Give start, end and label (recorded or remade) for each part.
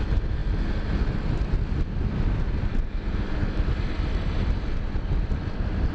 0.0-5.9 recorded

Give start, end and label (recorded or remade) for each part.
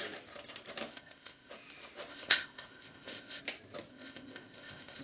0.0-0.9 recorded; 0.9-1.5 remade; 1.5-2.1 recorded; 2.1-3.4 remade; 3.4-3.9 recorded; 3.9-5.0 remade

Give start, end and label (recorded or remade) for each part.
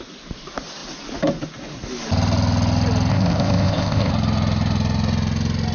0.0-3.1 recorded; 3.1-4.1 remade; 4.1-5.7 recorded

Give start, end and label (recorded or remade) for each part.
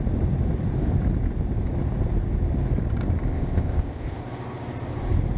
0.0-3.3 recorded; 3.3-4.2 remade; 4.2-5.4 recorded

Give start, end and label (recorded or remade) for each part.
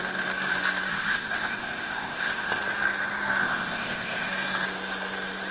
0.0-0.9 recorded; 0.9-2.6 remade; 2.6-3.4 recorded; 3.4-4.3 remade; 4.3-5.5 recorded